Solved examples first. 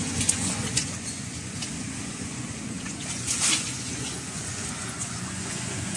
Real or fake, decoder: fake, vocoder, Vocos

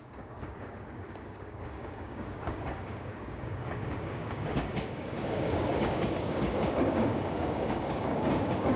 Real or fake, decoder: fake, codec, DAC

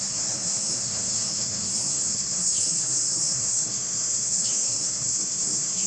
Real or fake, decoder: fake, codec, SNAC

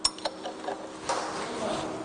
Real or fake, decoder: real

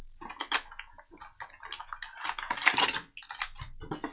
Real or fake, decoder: real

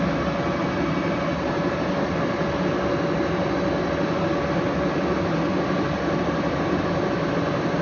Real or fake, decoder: real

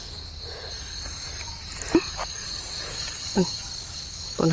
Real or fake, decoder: real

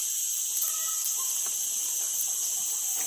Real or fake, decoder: fake, vocoder, BigVGAN v2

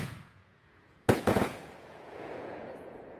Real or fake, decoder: fake, vocoder, Vocos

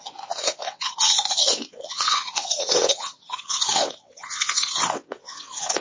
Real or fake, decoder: fake, vocoder, WaveNeXt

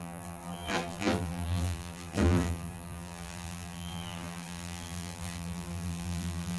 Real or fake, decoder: fake, vocoder, BigVGAN v2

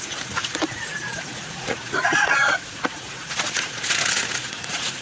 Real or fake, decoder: fake, vocoder, Vocos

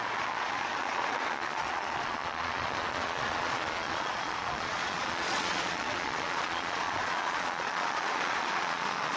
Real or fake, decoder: fake, vocoder, Vocos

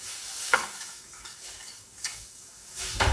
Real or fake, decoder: fake, codec, DAC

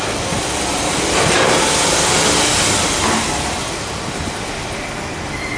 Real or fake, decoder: real